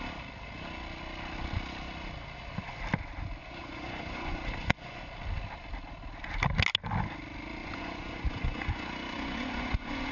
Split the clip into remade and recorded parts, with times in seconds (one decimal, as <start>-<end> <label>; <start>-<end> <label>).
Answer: 0.0-3.4 recorded; 3.4-5.0 remade; 5.0-7.6 recorded; 7.6-10.1 remade